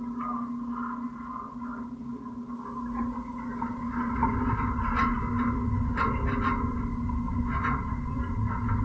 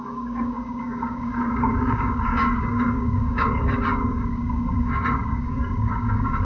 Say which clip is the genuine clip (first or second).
first